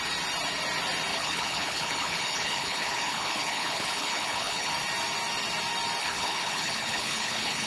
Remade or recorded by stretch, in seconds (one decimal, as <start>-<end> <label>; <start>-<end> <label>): 0.0-1.1 recorded; 1.1-4.7 remade; 4.7-6.0 recorded; 6.0-7.7 remade

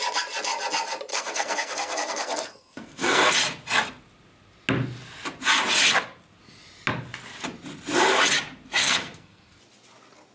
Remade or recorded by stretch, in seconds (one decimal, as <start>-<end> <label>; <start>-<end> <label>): 0.0-1.1 recorded; 1.1-3.3 remade; 3.3-8.8 recorded; 8.8-9.6 remade; 9.6-10.3 recorded